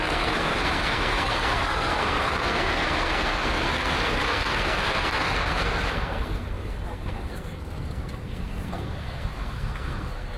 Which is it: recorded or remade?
remade